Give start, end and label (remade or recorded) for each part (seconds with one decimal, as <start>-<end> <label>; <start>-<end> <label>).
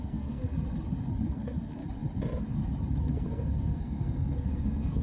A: 0.0-0.4 remade; 0.4-1.3 recorded; 1.3-1.8 remade; 1.8-3.0 recorded; 3.0-5.0 remade